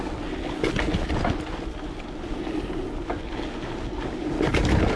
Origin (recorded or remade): recorded